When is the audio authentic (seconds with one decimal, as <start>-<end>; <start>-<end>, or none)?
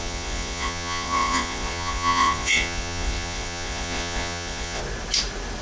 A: 4.8-5.6